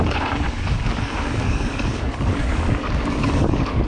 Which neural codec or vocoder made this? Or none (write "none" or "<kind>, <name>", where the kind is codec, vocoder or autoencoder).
codec, DAC